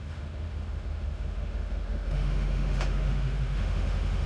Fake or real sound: fake